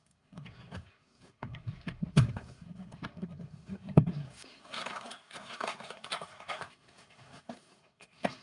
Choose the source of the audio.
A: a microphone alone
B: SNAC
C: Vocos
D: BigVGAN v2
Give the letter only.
B